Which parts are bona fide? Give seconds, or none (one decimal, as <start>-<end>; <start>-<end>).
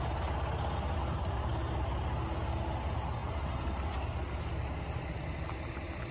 0.0-6.1